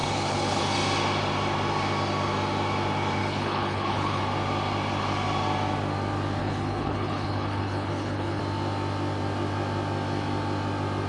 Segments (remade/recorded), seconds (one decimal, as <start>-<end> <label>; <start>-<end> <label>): 0.0-0.6 remade; 0.6-3.2 recorded; 3.2-4.2 remade; 4.2-6.4 recorded; 6.4-8.4 remade; 8.4-11.1 recorded